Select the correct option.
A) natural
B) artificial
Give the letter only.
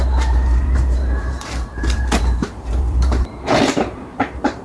B